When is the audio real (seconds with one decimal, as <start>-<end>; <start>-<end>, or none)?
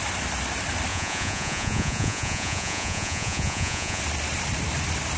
0.0-0.9; 4.0-5.2